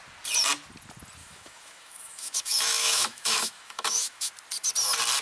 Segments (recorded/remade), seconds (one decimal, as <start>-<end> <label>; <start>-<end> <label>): 0.0-1.2 recorded; 1.2-4.3 remade; 4.3-5.2 recorded